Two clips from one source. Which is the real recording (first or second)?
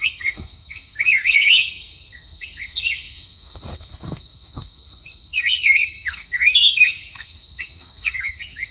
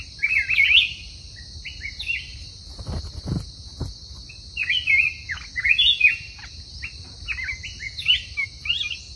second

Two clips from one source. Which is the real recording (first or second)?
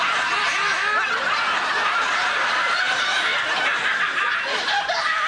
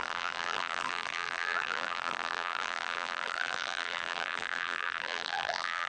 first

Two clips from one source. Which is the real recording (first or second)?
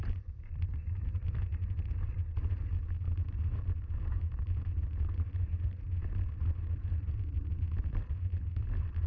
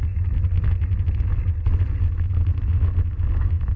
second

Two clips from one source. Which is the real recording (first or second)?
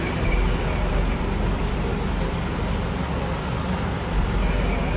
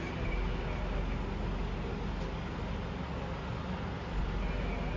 second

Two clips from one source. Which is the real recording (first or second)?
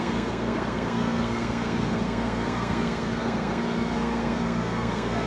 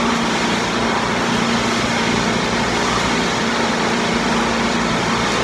second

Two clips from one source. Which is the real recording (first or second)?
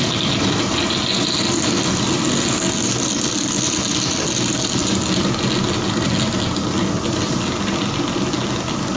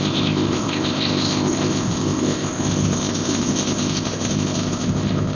first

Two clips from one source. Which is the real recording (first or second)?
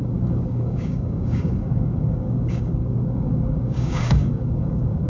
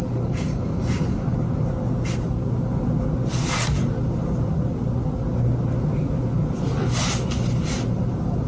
second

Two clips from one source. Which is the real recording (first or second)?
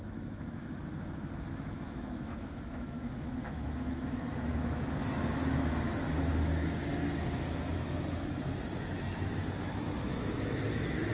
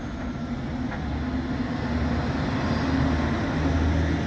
second